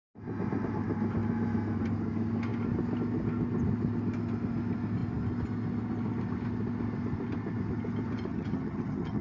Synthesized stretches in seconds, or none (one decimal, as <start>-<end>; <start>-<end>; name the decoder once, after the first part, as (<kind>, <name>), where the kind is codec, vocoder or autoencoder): 8.3-9.2 (vocoder, HiFi-GAN)